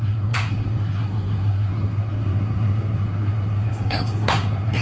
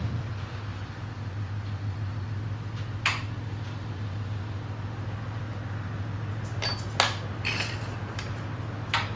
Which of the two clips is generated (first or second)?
first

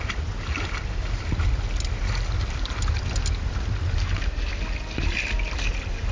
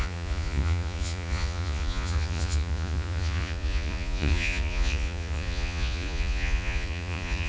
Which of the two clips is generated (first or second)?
second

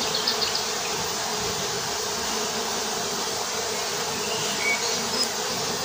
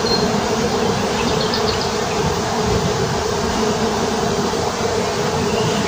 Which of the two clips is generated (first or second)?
second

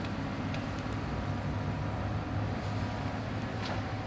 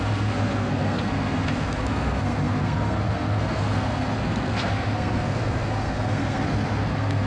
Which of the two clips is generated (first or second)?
second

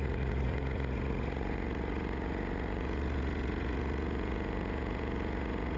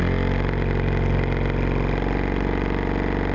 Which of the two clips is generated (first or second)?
first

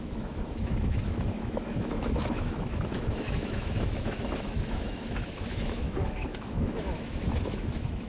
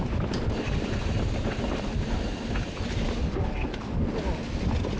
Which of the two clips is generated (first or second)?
first